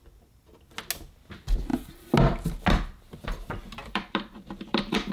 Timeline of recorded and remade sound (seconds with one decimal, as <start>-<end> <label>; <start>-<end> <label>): 0.0-3.8 recorded; 3.8-5.1 remade